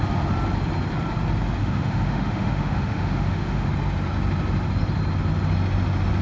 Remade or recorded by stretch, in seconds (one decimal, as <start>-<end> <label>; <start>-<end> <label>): 0.0-1.6 recorded; 1.6-3.7 remade; 3.7-6.2 recorded